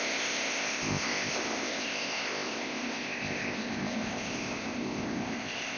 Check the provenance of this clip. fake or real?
fake